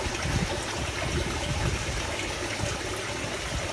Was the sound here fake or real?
real